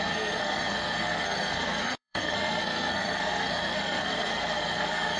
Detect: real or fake fake